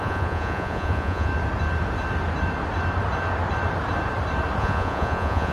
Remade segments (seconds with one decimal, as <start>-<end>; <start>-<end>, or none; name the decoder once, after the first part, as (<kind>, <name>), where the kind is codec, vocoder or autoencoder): 0.0-1.3 (vocoder, Vocos); 4.6-5.5